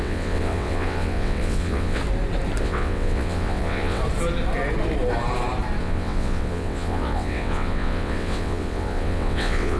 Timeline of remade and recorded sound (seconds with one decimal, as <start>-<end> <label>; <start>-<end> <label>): 0.0-2.0 remade; 2.0-2.6 recorded; 2.6-4.0 remade; 4.0-5.8 recorded; 5.8-9.8 remade